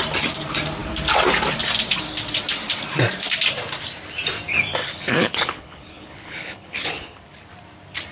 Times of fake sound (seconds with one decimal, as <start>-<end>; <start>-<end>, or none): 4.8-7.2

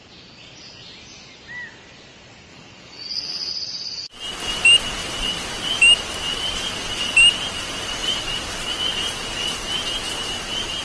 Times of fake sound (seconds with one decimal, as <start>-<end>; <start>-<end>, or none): 2.5-3.5

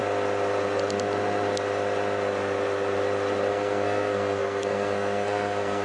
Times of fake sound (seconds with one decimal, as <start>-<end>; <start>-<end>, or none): 3.5-5.8